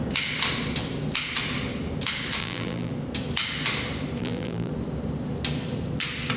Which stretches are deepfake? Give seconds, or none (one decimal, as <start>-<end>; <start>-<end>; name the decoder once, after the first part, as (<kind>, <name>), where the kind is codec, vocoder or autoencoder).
2.4-2.9 (vocoder, BigVGAN v2); 4.2-4.7